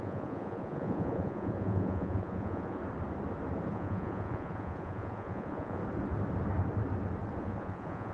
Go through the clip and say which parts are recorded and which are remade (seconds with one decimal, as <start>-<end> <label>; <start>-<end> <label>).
0.0-2.8 remade; 2.8-3.7 recorded; 3.7-5.8 remade; 5.8-7.4 recorded; 7.4-8.1 remade